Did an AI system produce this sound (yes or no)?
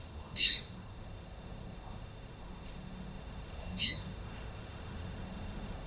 yes